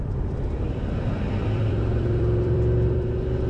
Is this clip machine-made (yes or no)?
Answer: yes